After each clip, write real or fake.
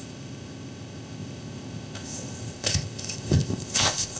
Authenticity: fake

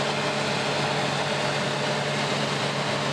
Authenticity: real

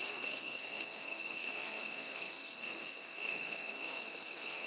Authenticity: fake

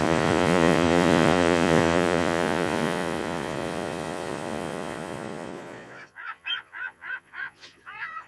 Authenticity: fake